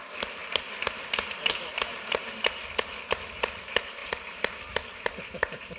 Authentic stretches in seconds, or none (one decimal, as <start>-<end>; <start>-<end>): 2.6-3.3

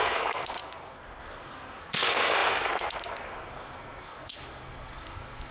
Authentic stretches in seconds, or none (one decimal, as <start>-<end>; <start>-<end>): none

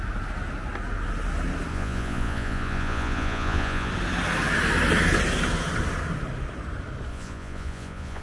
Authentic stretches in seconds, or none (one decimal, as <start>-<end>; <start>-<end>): 0.0-1.7; 3.9-7.1

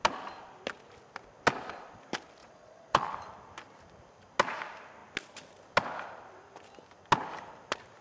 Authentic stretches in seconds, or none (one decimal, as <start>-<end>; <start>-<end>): 0.0-2.4; 3.1-8.0

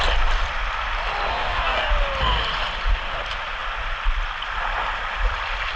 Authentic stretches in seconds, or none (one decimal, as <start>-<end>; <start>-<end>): 0.0-1.3; 1.9-5.8